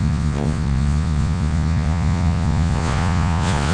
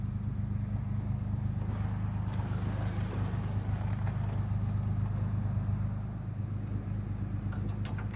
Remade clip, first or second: first